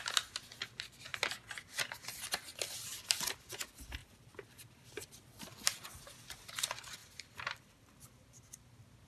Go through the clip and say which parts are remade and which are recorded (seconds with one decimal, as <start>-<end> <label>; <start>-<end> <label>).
0.0-1.1 recorded; 1.1-1.9 remade; 1.9-2.5 recorded; 2.5-3.5 remade; 3.5-4.0 recorded; 4.0-6.0 remade; 6.0-7.0 recorded; 7.0-8.2 remade; 8.2-9.1 recorded